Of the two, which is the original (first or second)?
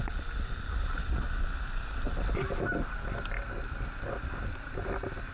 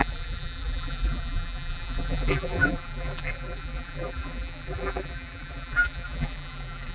first